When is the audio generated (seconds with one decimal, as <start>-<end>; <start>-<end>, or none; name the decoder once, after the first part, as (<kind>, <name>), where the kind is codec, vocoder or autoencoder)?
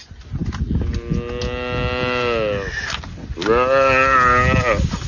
none